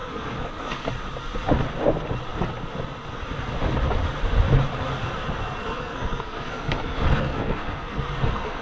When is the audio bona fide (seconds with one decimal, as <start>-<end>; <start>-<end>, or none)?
0.9-5.6